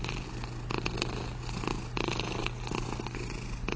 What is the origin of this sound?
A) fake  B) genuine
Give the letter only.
B